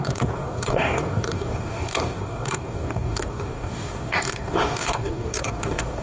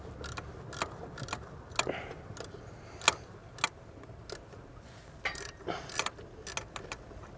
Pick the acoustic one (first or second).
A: second